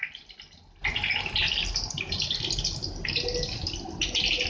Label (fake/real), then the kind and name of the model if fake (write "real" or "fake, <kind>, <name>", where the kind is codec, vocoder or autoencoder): real